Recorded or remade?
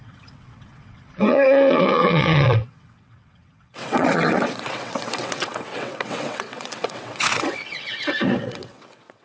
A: remade